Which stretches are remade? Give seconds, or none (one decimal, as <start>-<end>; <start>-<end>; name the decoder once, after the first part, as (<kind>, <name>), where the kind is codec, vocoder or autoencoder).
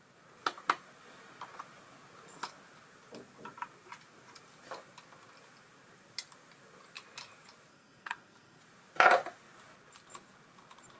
7.7-8.6 (codec, SNAC)